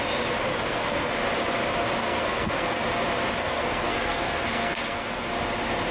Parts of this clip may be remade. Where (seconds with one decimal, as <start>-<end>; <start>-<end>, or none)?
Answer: 0.5-1.1; 2.0-2.8; 3.4-5.3